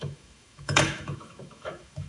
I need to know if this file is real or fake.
fake